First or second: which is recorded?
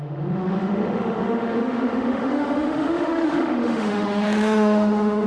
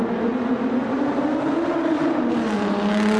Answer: second